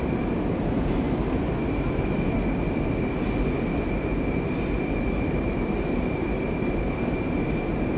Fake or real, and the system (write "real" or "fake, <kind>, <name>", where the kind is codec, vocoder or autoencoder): real